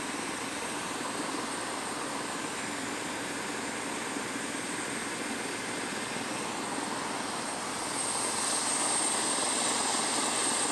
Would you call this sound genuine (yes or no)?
yes